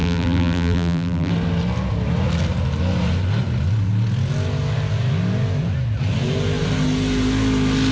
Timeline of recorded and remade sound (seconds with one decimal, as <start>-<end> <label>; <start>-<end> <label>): 0.0-1.3 remade; 1.3-7.9 recorded